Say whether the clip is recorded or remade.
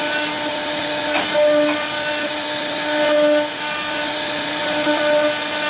recorded